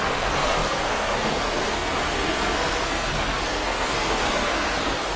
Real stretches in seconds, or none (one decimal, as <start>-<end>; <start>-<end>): none